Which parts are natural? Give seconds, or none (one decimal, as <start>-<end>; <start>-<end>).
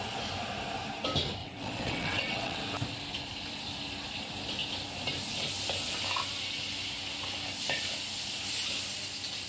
0.0-1.4; 2.6-9.5